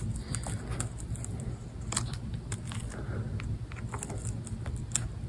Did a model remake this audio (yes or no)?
no